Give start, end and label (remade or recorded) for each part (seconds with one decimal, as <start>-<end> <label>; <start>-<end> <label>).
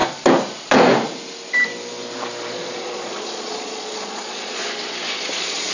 0.0-2.5 recorded; 2.5-4.6 remade; 4.6-5.1 recorded; 5.1-5.7 remade